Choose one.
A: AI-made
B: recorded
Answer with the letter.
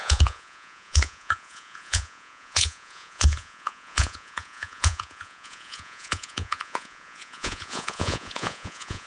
A